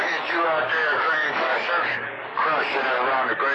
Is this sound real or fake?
fake